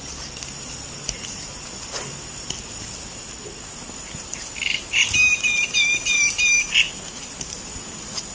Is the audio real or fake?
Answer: real